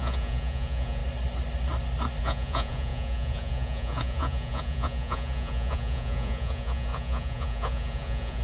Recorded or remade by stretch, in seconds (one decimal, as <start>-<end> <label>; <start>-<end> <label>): 0.0-1.0 remade; 1.0-2.2 recorded; 2.2-8.4 remade